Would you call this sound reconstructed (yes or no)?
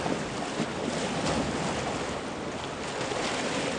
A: no